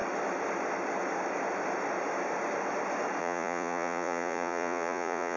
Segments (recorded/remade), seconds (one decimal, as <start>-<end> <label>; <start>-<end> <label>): 0.0-3.2 recorded; 3.2-5.4 remade